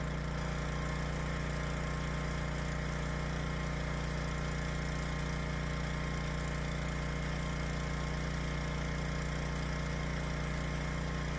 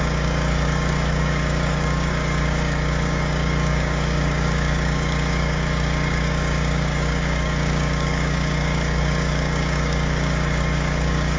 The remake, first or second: second